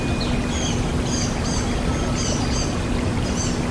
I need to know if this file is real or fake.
real